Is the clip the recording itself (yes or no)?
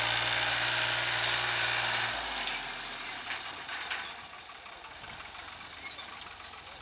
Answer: yes